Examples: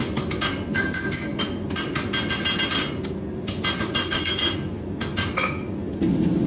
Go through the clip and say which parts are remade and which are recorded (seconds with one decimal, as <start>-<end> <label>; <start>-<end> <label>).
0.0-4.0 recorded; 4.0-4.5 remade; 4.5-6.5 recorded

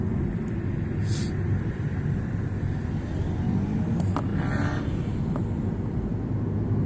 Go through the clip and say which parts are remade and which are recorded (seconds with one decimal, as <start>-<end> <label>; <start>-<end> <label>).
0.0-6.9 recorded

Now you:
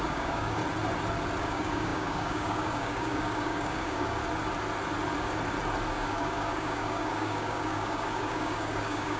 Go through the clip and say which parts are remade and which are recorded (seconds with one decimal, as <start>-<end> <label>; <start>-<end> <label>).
0.0-0.6 remade; 0.6-1.4 recorded; 1.4-4.2 remade; 4.2-5.9 recorded; 5.9-9.2 remade

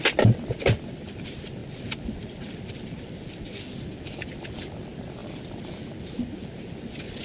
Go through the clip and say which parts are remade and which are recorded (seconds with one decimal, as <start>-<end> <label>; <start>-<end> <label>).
0.0-7.2 recorded

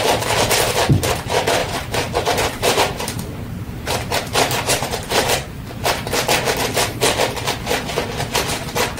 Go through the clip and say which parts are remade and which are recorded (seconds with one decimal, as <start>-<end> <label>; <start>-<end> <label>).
0.0-1.6 recorded; 1.6-5.6 remade; 5.6-9.0 recorded

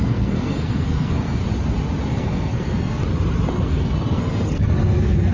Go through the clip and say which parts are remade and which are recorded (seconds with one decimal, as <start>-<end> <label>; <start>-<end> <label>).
0.0-1.4 remade; 1.4-2.1 recorded; 2.1-3.0 remade; 3.0-3.5 recorded; 3.5-5.3 remade

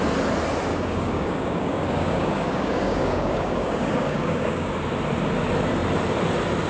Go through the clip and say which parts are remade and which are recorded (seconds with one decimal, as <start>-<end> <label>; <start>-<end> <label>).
0.0-0.7 recorded; 0.7-4.7 remade; 4.7-6.7 recorded

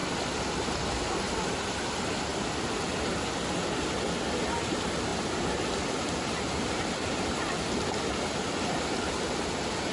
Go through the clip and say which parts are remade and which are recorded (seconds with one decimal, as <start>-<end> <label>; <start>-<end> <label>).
0.0-2.3 recorded; 2.3-3.0 remade; 3.0-9.9 recorded